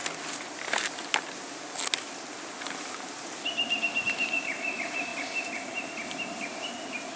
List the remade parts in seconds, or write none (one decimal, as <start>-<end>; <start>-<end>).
4.0-5.1; 6.3-7.2